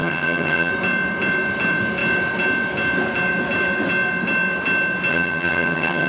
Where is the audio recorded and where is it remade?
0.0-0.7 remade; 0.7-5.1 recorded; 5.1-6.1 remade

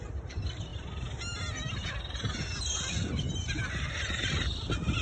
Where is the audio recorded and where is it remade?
0.0-5.0 recorded

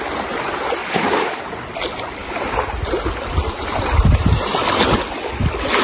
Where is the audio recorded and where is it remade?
0.0-0.8 recorded; 0.8-1.4 remade; 1.4-5.8 recorded

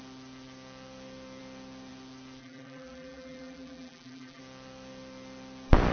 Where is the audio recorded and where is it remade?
0.0-2.4 recorded; 2.4-4.4 remade; 4.4-5.9 recorded

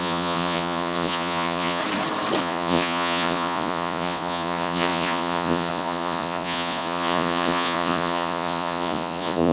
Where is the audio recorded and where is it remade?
0.0-1.8 remade; 1.8-2.4 recorded; 2.4-9.5 remade

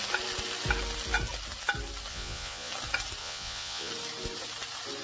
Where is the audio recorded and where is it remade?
0.0-2.1 recorded; 2.1-2.7 remade; 2.7-3.2 recorded; 3.2-3.9 remade; 3.9-5.0 recorded

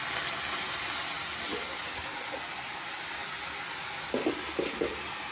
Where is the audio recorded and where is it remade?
0.0-5.3 recorded

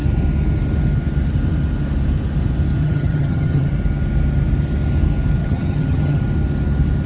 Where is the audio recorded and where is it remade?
0.0-2.8 recorded; 2.8-3.7 remade; 3.7-5.4 recorded; 5.4-6.2 remade; 6.2-7.1 recorded